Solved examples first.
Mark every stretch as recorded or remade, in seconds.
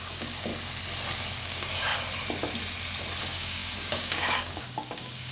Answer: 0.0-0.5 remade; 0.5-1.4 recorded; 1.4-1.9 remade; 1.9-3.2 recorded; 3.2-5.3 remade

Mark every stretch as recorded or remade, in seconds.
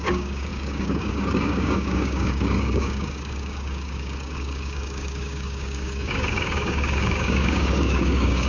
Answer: 0.0-8.5 remade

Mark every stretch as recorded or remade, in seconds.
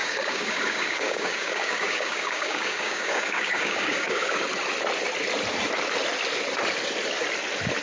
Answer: 0.0-4.4 remade; 4.4-7.8 recorded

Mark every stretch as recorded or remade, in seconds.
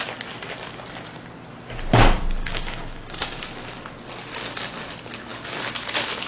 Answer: 0.0-2.4 recorded; 2.4-3.4 remade; 3.4-6.3 recorded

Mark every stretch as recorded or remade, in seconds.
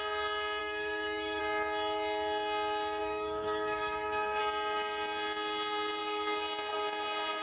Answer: 0.0-0.6 recorded; 0.6-1.4 remade; 1.4-3.0 recorded; 3.0-4.4 remade; 4.4-7.4 recorded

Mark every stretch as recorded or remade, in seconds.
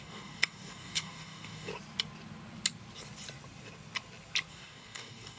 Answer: 0.0-1.7 remade; 1.7-4.5 recorded; 4.5-5.4 remade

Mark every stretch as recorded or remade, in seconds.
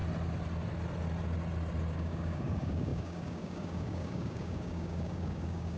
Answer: 0.0-1.9 recorded; 1.9-5.8 remade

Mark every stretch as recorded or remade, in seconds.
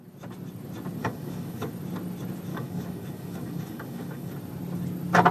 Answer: 0.0-1.0 recorded; 1.0-1.7 remade; 1.7-2.5 recorded; 2.5-4.3 remade; 4.3-5.3 recorded